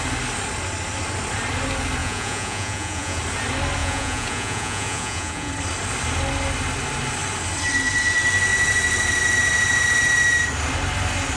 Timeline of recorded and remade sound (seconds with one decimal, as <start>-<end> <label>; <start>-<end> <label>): 0.0-2.0 recorded; 2.0-3.2 remade; 3.2-3.8 recorded; 3.8-5.5 remade; 5.5-11.4 recorded